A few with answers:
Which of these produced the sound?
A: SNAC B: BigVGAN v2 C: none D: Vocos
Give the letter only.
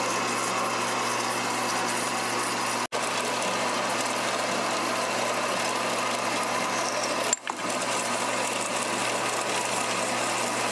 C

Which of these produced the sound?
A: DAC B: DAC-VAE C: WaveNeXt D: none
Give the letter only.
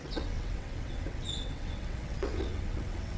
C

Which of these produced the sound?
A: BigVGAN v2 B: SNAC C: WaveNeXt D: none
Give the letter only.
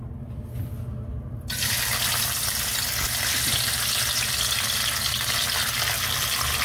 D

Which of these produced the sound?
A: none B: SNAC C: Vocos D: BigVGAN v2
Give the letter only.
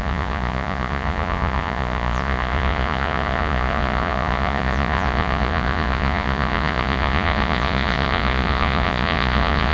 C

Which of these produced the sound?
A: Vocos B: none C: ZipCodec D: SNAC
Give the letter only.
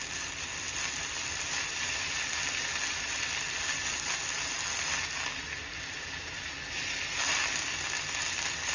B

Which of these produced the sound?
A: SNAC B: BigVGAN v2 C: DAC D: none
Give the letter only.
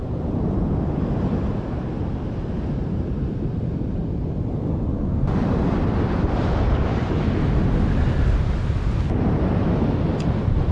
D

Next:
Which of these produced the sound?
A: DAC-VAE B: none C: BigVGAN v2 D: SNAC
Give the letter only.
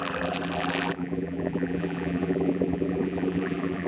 C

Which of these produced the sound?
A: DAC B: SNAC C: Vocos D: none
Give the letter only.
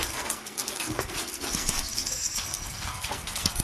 B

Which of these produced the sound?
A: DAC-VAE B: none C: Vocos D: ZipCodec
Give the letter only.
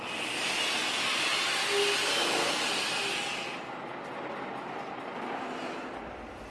B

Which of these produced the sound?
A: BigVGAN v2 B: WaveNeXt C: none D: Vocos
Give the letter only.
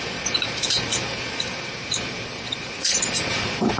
A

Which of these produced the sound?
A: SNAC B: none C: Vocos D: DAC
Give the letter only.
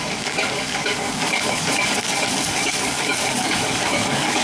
D